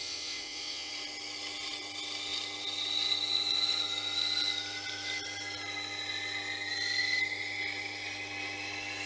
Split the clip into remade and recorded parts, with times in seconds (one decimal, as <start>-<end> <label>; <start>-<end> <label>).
0.0-0.9 remade; 0.9-9.1 recorded